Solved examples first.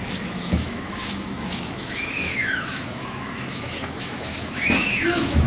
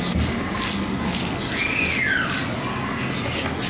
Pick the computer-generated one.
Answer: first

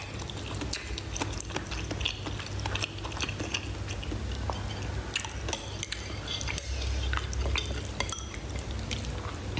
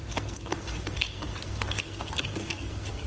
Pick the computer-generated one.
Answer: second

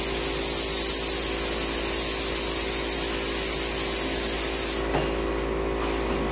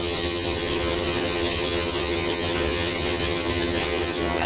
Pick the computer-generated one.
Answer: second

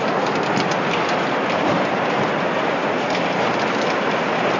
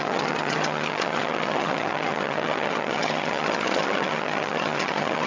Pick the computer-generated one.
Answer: second